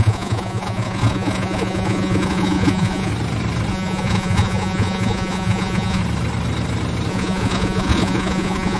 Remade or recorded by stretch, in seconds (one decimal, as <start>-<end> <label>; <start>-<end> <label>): 0.0-3.1 remade; 3.1-3.7 recorded; 3.7-6.0 remade; 6.0-7.1 recorded; 7.1-8.8 remade